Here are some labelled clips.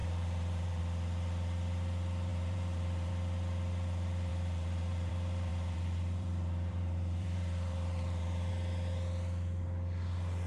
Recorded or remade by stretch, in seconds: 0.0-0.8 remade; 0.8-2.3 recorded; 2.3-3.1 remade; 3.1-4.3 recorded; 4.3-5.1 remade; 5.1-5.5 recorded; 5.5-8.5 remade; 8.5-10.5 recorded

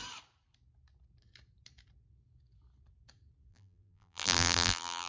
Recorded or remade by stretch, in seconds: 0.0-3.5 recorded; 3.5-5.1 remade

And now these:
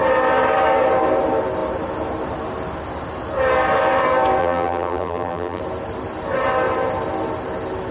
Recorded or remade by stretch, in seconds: 0.0-4.4 recorded; 4.4-5.6 remade; 5.6-7.9 recorded

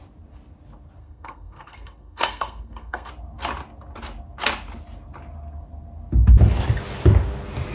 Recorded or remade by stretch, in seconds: 0.0-1.0 recorded; 1.0-3.1 remade; 3.1-7.7 recorded